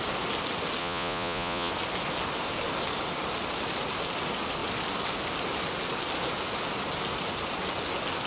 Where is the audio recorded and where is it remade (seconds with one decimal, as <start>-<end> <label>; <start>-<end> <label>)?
0.0-0.8 recorded; 0.8-1.7 remade; 1.7-8.3 recorded